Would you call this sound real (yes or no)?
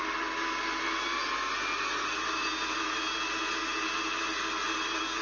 yes